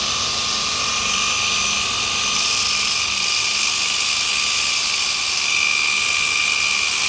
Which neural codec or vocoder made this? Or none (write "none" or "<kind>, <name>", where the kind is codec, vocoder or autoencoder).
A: none